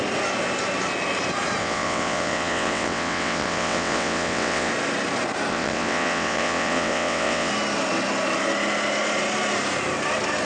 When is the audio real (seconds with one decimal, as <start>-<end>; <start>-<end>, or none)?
0.0-1.6; 4.7-5.5; 7.5-10.4